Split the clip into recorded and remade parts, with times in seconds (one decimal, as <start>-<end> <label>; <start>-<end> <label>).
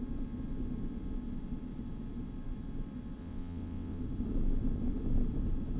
0.0-3.2 recorded; 3.2-4.0 remade; 4.0-5.8 recorded